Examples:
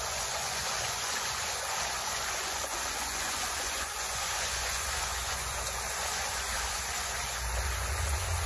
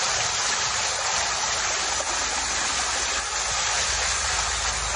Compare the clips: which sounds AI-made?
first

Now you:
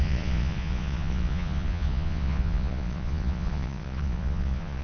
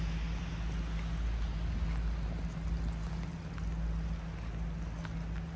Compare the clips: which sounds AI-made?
first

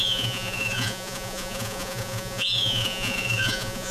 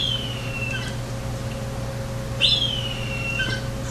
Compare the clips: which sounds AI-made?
first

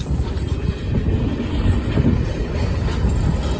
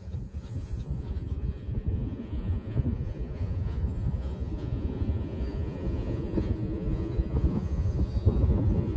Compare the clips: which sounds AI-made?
second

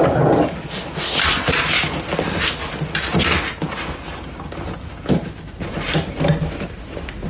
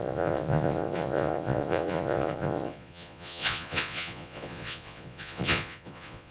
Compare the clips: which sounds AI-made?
second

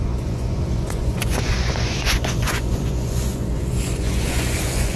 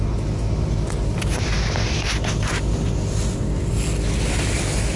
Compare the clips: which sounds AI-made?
first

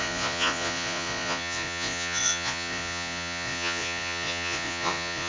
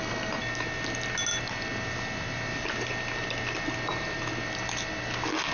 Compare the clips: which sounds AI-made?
first